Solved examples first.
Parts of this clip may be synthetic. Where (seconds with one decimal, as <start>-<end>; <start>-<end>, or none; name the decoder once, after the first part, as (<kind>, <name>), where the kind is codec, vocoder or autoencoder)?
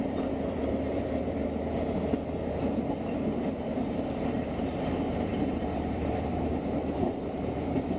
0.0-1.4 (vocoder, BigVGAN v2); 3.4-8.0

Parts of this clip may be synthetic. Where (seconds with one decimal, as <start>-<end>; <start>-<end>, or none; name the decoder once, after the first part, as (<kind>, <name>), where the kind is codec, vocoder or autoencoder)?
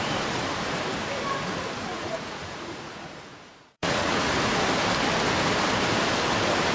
1.9-4.3 (vocoder, Vocos)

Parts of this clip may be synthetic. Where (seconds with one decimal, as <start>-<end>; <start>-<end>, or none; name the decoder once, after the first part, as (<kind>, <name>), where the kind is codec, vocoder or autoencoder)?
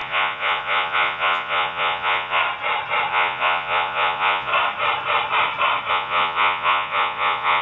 0.0-2.4 (vocoder, Vocos); 3.1-4.5; 5.9-7.6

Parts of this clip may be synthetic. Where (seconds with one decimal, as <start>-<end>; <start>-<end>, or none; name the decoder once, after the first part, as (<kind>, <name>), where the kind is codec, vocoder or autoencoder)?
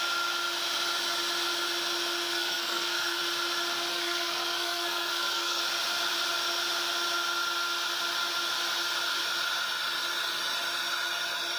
2.3-3.2 (codec, SNAC); 3.9-5.6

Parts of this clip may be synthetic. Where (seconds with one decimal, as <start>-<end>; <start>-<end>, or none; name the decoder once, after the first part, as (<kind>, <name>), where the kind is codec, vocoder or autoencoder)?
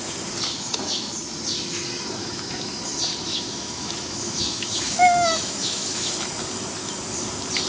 0.5-1.1 (autoencoder, DAC-VAE); 2.2-2.8; 3.3-6.1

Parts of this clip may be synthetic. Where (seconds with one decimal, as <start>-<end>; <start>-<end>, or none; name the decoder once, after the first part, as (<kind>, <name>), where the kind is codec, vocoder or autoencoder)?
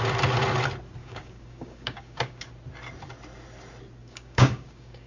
1.0-2.5 (codec, DAC); 4.0-5.1